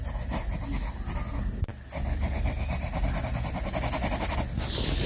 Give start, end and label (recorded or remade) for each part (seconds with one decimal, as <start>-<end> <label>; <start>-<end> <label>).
0.0-5.1 recorded